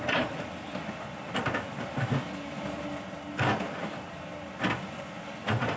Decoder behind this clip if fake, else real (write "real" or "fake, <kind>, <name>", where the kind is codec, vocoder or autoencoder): real